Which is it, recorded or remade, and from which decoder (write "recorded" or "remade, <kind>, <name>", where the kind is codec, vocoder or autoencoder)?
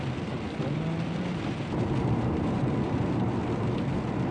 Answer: remade, vocoder, BigVGAN v2